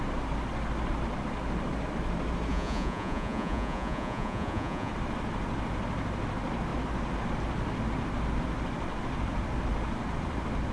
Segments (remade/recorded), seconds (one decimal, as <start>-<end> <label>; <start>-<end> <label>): 0.0-2.5 recorded; 2.5-4.9 remade; 4.9-10.7 recorded